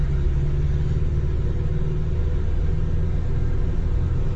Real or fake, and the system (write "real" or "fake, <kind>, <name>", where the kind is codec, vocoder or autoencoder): real